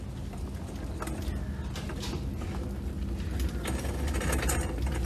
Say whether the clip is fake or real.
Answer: real